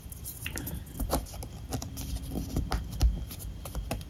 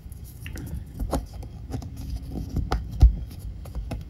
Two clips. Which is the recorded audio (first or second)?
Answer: first